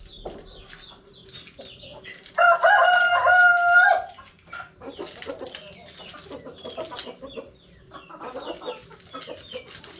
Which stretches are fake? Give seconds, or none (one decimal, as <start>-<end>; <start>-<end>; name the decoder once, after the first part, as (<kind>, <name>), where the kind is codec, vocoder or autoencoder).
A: none